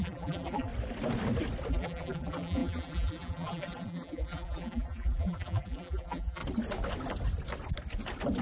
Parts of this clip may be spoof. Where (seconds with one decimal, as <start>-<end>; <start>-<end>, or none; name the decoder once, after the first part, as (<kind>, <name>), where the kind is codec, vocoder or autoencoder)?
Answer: 0.0-0.7 (vocoder, BigVGAN v2); 1.7-6.4